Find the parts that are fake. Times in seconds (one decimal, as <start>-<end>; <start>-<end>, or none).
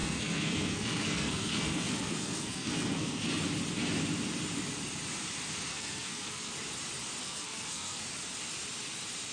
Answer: 0.0-3.4; 5.7-6.5; 7.2-8.0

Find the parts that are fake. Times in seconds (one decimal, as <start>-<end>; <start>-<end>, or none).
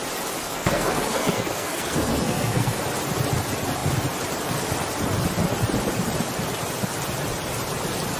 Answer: 0.4-2.8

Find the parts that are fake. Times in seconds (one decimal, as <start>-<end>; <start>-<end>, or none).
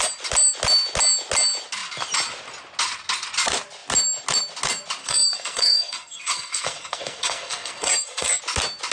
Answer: 5.0-8.4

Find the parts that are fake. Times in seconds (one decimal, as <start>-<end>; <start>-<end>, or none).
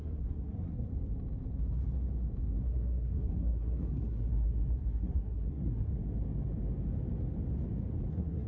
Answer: 0.0-0.9; 2.6-5.9; 8.1-8.5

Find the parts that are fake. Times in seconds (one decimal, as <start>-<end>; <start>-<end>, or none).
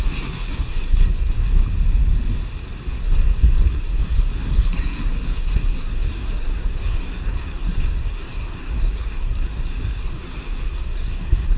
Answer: 0.0-1.6; 2.9-11.6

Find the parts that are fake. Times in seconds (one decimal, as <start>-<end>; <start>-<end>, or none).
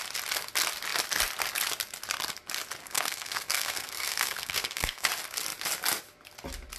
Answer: 2.8-5.1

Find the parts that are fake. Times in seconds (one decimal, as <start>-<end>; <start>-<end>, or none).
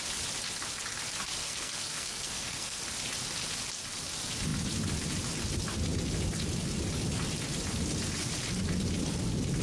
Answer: 1.4-2.8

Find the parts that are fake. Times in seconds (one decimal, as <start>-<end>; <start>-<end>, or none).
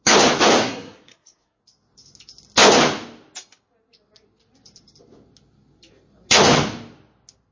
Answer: 0.6-1.6